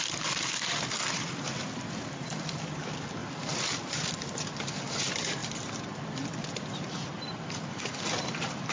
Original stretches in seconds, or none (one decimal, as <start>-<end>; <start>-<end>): 0.0-8.7